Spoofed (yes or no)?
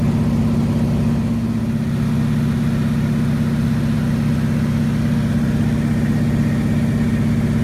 no